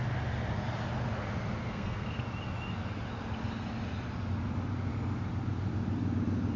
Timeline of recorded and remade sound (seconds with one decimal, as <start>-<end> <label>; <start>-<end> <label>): 0.0-1.6 recorded; 1.6-2.2 remade; 2.2-6.6 recorded